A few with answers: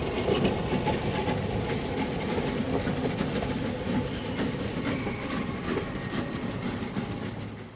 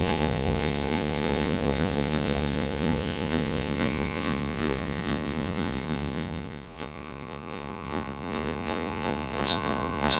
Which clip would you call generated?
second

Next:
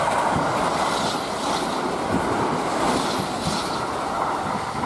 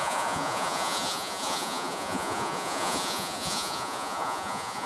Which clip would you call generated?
second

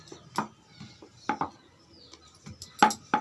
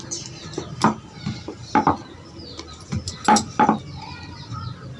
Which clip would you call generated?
second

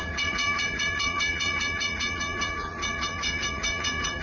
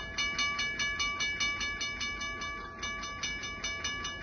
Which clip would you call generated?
first